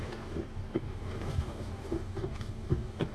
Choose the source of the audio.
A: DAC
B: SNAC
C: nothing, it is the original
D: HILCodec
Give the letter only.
A